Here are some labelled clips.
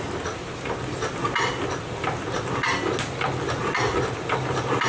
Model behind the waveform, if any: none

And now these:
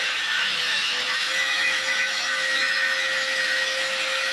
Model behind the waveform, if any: autoencoder, DAC-VAE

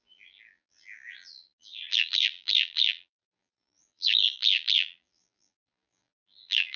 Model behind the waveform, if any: vocoder, BigVGAN v2